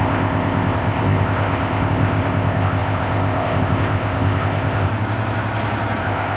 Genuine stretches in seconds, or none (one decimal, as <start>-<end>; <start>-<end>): 4.9-6.0